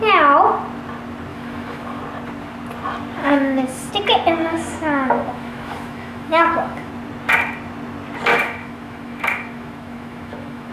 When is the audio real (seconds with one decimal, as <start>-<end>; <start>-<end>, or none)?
0.0-1.3; 2.0-3.2; 3.9-4.5; 6.9-8.3